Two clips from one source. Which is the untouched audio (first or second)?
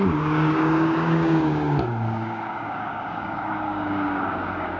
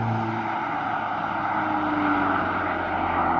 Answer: second